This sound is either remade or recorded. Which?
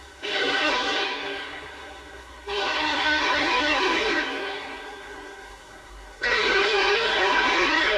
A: remade